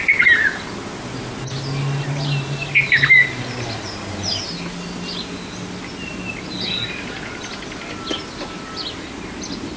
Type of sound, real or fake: real